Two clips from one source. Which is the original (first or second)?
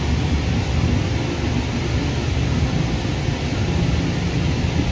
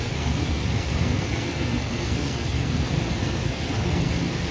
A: first